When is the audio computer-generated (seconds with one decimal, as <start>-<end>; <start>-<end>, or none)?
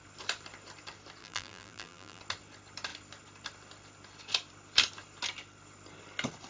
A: 1.2-2.2